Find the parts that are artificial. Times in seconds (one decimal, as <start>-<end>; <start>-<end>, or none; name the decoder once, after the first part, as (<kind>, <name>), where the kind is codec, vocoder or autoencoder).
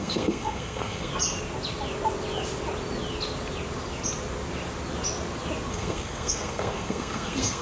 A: 0.0-1.1 (codec, SNAC); 5.7-7.6